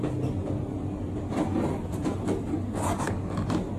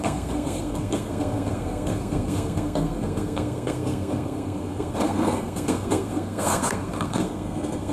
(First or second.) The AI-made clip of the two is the second